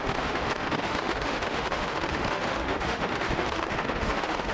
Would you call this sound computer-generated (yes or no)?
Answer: yes